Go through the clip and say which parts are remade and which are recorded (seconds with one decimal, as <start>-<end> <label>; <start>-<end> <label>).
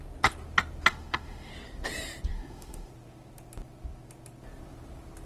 0.0-0.9 recorded; 0.9-1.5 remade; 1.5-2.3 recorded; 2.3-2.9 remade; 2.9-5.3 recorded